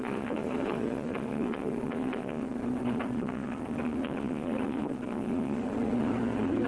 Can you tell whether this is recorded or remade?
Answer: remade